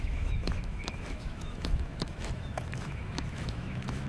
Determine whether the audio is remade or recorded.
remade